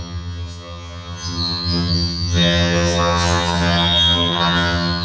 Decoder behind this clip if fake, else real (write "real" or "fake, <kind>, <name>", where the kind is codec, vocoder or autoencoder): fake, vocoder, HiFi-GAN